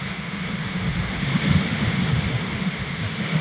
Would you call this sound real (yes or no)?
no